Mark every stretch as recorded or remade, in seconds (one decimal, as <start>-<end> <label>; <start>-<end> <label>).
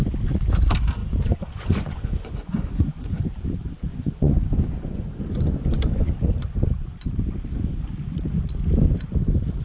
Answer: 0.0-1.0 recorded; 1.0-3.2 remade; 3.2-3.9 recorded; 3.9-6.1 remade; 6.1-9.6 recorded